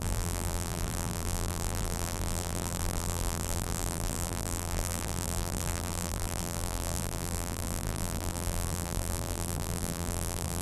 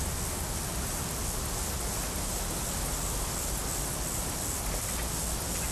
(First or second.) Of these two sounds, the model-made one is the first